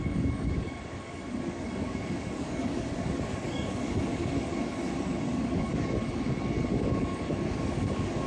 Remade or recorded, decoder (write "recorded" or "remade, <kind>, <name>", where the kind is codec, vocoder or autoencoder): remade, codec, DAC